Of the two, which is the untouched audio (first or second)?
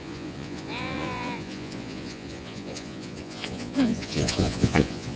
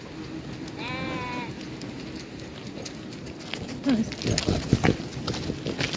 second